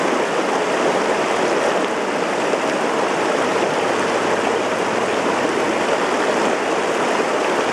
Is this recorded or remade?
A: recorded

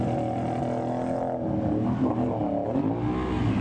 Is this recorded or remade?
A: recorded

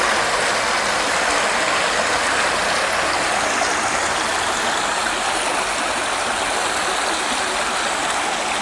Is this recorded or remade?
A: recorded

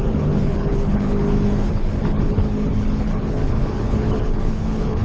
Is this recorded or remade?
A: remade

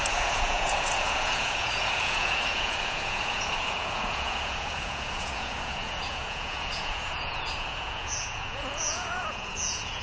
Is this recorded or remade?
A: remade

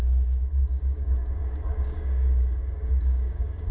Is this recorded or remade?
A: remade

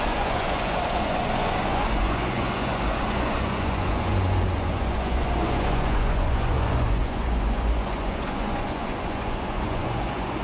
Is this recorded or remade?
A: remade